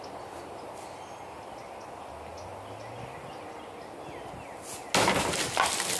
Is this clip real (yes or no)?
yes